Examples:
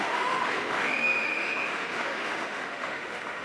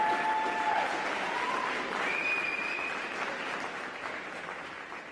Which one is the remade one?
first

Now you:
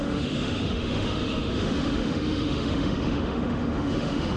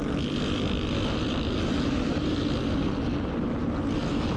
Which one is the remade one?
first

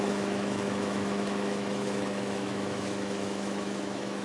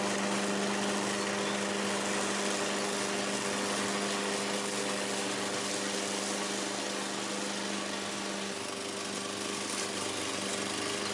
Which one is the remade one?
first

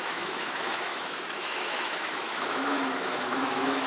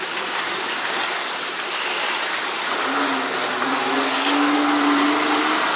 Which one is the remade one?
first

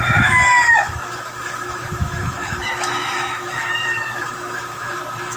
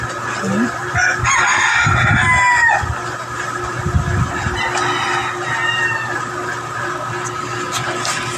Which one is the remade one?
first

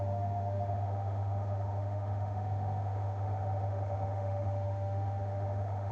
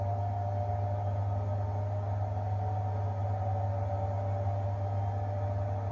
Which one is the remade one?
first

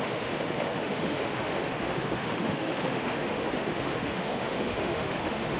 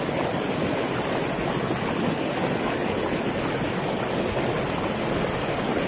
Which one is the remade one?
first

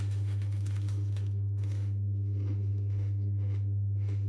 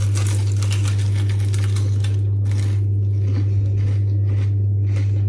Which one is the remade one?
first